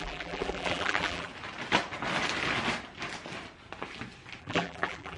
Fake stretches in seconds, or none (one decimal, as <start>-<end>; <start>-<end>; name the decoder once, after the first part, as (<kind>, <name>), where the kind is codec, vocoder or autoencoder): 0.0-1.3 (vocoder, BigVGAN v2); 4.4-5.2